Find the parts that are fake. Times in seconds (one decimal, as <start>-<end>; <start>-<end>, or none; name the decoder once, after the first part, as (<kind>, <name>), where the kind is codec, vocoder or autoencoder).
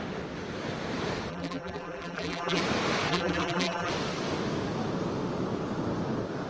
1.3-2.6 (vocoder, BigVGAN v2); 3.1-3.9